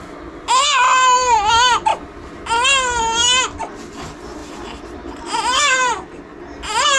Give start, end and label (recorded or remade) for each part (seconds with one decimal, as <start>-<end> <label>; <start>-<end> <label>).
0.0-1.0 recorded; 1.0-1.5 remade; 1.5-4.4 recorded; 4.4-6.4 remade; 6.4-7.0 recorded